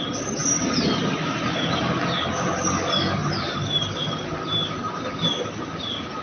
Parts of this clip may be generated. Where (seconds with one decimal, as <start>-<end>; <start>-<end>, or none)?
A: 0.4-1.8; 3.2-5.3